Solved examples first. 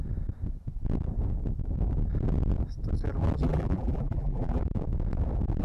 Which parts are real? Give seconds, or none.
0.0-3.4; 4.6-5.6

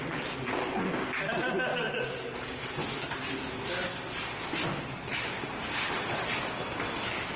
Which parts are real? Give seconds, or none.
0.0-1.7; 6.1-7.4

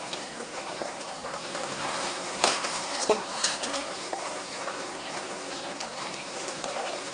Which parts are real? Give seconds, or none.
none

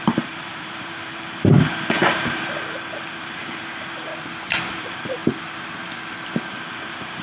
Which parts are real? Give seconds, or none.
4.1-4.8; 5.2-6.5

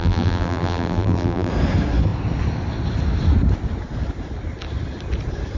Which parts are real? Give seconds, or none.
1.5-5.6

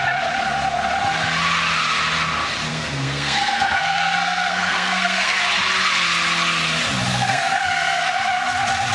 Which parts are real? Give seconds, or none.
0.0-2.7; 5.4-7.1; 8.1-8.9

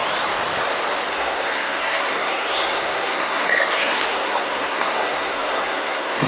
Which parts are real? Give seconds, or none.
0.0-1.1

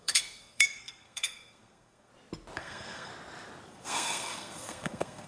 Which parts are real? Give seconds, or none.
2.1-2.6; 3.1-3.7